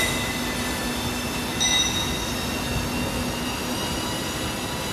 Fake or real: real